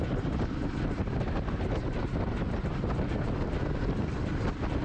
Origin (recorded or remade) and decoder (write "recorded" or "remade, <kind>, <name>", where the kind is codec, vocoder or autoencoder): recorded